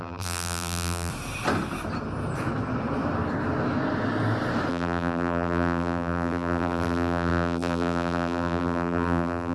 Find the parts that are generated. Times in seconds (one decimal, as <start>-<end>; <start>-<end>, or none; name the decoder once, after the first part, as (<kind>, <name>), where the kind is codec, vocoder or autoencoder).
0.0-1.1 (vocoder, BigVGAN v2); 4.7-9.5